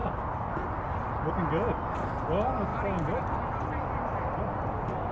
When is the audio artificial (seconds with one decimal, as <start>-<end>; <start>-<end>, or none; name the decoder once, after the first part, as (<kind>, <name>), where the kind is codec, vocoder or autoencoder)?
none